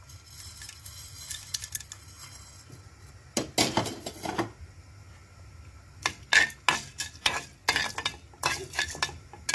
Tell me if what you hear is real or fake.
real